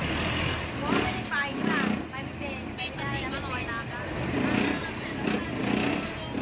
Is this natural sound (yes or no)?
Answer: yes